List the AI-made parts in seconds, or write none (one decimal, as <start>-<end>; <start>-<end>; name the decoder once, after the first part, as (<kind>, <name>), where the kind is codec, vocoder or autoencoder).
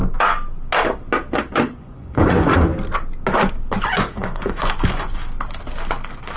1.6-2.7 (vocoder, Vocos); 3.8-5.2